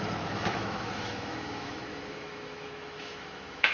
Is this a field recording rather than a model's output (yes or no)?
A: no